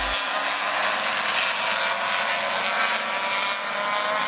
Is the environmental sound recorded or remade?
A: recorded